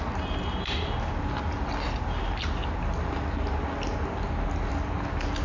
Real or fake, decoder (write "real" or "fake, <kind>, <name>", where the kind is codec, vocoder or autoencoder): real